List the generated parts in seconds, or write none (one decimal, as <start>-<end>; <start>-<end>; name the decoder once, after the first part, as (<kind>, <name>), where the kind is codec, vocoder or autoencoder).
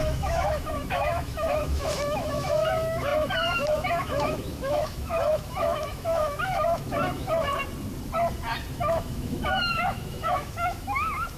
0.0-7.5 (autoencoder, DAC-VAE); 8.7-11.4